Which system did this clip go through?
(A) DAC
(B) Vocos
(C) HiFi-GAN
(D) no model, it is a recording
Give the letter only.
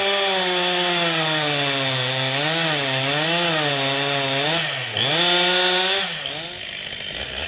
D